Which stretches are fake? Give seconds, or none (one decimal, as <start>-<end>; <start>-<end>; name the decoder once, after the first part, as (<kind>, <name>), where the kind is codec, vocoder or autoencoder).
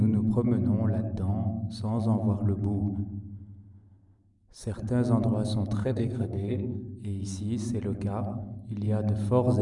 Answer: 5.8-7.4 (codec, SNAC)